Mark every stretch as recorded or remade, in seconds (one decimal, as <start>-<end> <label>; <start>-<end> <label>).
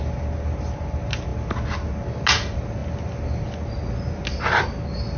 0.0-5.2 recorded